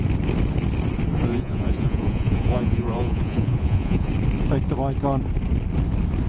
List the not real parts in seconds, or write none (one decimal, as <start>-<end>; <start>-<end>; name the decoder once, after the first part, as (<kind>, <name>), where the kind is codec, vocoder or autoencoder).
1.3-4.1 (vocoder, Vocos)